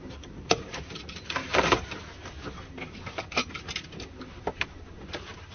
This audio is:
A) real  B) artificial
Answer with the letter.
A